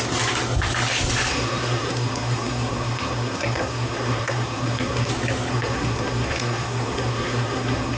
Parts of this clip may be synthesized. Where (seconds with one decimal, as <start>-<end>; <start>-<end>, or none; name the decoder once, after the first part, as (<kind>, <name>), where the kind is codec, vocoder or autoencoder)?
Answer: 1.3-5.1 (codec, SNAC); 5.5-8.0